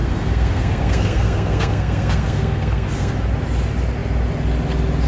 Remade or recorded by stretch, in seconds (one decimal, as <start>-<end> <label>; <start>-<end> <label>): 0.0-3.1 remade; 3.1-5.1 recorded